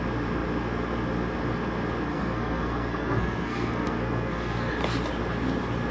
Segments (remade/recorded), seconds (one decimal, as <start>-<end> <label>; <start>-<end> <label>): 0.0-2.1 recorded; 2.1-4.7 remade; 4.7-5.9 recorded